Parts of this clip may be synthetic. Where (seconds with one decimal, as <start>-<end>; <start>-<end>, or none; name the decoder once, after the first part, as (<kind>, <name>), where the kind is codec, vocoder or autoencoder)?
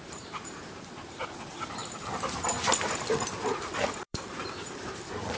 0.0-1.8 (vocoder, BigVGAN v2); 3.5-5.4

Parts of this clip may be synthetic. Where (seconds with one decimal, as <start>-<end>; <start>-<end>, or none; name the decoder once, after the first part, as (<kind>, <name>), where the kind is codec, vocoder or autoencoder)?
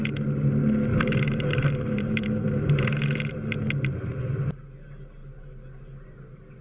0.9-4.6 (vocoder, BigVGAN v2)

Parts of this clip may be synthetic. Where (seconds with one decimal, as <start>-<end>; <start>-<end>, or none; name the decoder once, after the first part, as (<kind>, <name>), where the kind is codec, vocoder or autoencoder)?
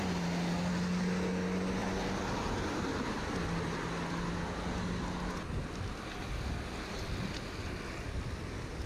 1.8-2.5 (vocoder, BigVGAN v2)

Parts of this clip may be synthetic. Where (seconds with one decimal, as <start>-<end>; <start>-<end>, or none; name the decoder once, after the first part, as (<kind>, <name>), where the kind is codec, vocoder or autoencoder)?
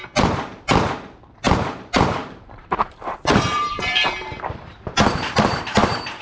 0.0-6.2 (vocoder, BigVGAN v2)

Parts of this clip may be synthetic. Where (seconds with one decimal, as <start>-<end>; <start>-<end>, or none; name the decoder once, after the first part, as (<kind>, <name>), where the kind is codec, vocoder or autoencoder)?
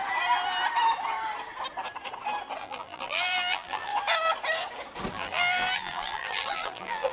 2.6-3.9 (vocoder, BigVGAN v2); 5.1-7.1